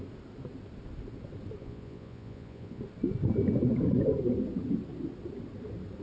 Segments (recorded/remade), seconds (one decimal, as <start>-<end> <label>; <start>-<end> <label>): 0.0-1.6 recorded; 1.6-2.8 remade; 2.8-6.0 recorded